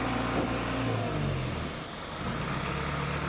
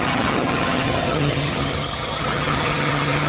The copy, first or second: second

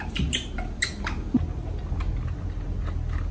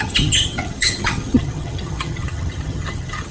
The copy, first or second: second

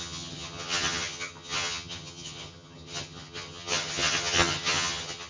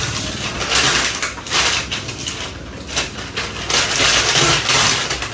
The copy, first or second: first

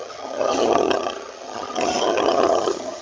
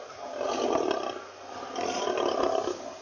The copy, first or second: first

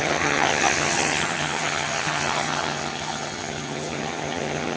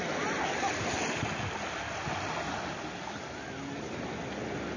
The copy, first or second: first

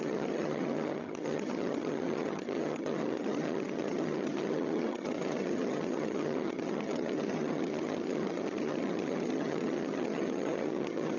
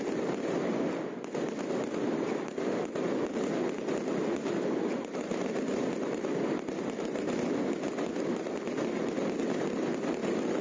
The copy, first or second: first